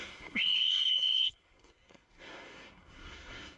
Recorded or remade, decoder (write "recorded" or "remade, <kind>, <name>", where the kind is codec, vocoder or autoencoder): remade, codec, SNAC